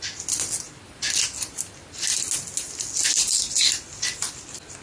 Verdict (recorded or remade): recorded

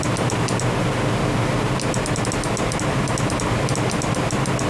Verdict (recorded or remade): recorded